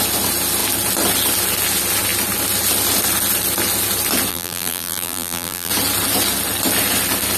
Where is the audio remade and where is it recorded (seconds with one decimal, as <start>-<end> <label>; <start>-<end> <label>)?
0.0-4.3 recorded; 4.3-5.7 remade; 5.7-7.4 recorded